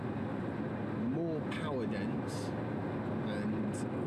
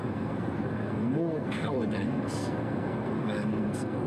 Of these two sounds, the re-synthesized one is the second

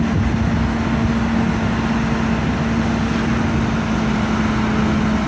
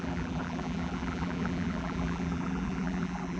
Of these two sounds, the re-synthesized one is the second